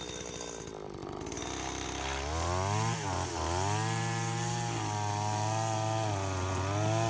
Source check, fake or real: real